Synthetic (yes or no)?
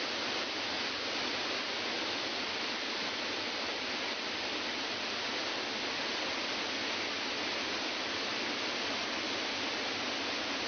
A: yes